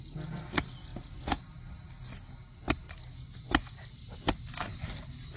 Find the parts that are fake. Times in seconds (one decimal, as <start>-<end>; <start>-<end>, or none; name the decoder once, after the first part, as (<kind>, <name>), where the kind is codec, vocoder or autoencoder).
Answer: none